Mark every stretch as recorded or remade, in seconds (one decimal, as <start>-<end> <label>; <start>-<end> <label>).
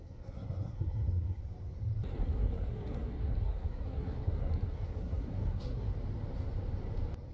0.0-1.4 remade; 1.4-2.2 recorded; 2.2-5.9 remade; 5.9-7.3 recorded